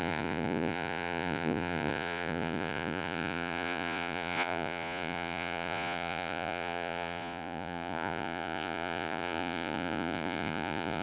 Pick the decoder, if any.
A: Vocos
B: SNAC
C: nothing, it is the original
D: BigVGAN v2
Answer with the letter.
A